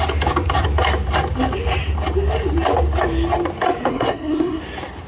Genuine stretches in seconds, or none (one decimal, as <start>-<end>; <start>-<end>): 0.0-3.9; 4.6-5.1